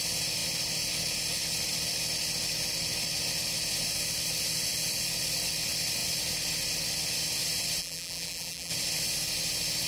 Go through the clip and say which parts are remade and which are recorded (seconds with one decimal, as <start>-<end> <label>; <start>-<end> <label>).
0.0-7.8 recorded; 7.8-8.7 remade; 8.7-9.9 recorded